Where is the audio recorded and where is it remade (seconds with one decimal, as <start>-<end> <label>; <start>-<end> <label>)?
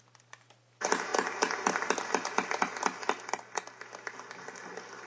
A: 0.0-5.1 recorded